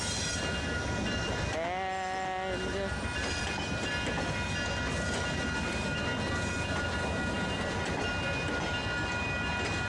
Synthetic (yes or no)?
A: no